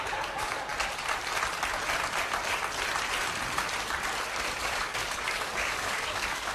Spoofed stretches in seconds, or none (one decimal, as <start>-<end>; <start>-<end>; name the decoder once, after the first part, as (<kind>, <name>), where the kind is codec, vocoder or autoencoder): 0.0-0.7 (codec, DAC); 4.6-6.5